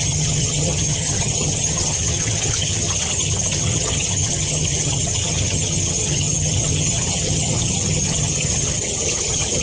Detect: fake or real fake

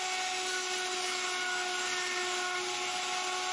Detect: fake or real real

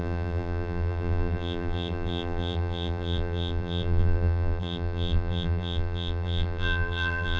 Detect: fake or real fake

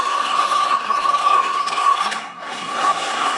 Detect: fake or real fake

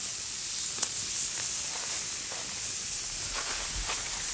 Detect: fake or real real